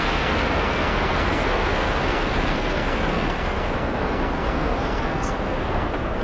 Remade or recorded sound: remade